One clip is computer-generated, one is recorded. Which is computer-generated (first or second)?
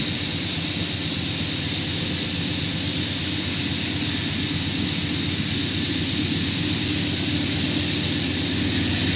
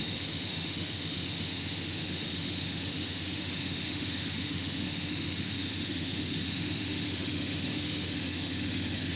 second